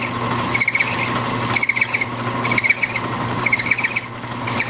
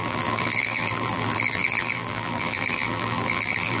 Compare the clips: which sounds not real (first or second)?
second